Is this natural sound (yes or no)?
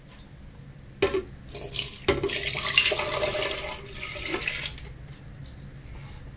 yes